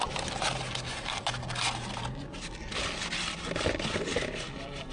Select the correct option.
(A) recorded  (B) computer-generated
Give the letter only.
A